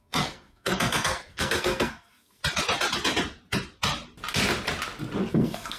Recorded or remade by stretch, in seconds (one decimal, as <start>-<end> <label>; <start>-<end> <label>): 0.0-2.4 remade; 2.4-5.3 recorded; 5.3-5.8 remade